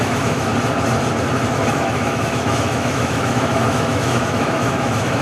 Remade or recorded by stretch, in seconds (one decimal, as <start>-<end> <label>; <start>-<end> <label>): 0.0-0.5 remade; 0.5-1.5 recorded; 1.5-5.2 remade